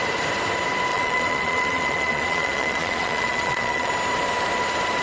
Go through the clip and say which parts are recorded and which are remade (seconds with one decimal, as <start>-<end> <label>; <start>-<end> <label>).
0.0-0.9 recorded; 0.9-3.9 remade; 3.9-5.0 recorded